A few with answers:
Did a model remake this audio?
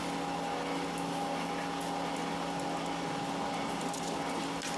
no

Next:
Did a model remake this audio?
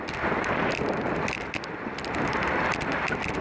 no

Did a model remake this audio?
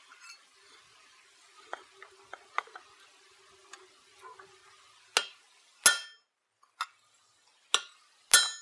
no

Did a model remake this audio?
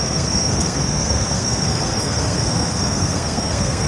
yes